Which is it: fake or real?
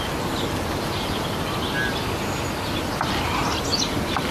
real